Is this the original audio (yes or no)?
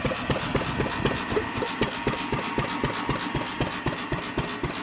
yes